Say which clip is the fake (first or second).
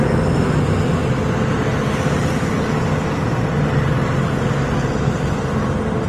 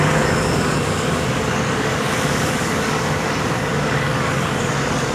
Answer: second